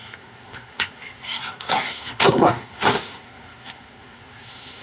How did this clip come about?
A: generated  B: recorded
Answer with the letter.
A